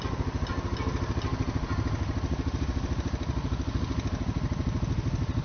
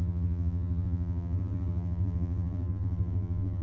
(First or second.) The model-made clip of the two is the second